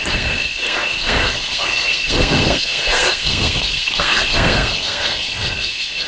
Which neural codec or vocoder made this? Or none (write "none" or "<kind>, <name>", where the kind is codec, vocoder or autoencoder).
codec, SNAC